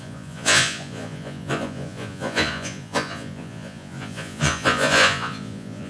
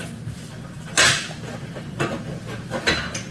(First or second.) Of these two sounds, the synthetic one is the first